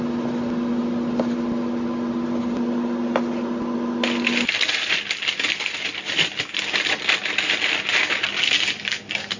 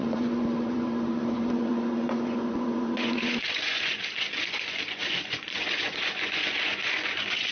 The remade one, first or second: second